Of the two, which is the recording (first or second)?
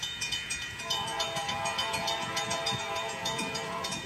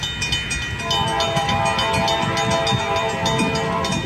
second